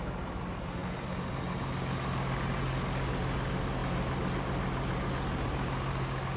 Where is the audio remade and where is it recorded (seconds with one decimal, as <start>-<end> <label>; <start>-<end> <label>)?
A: 0.0-6.4 recorded